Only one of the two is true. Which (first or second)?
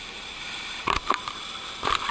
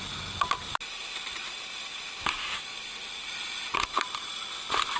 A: second